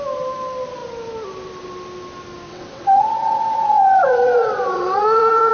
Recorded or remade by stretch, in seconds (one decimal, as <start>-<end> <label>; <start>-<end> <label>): 0.0-2.5 recorded; 2.5-5.5 remade